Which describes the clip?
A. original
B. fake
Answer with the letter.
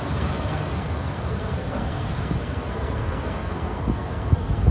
B